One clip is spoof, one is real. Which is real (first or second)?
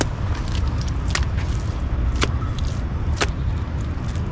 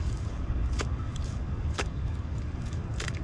first